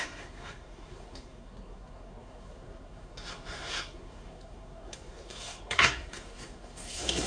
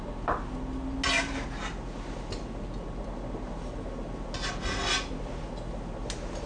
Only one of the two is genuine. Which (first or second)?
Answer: second